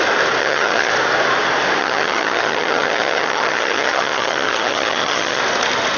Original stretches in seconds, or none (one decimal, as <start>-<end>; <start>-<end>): 0.0-0.4; 0.9-1.8; 5.4-6.0